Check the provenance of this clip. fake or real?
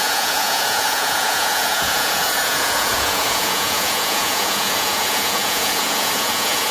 fake